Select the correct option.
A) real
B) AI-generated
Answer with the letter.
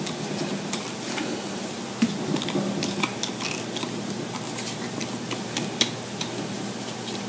A